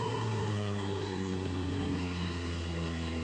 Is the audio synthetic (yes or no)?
yes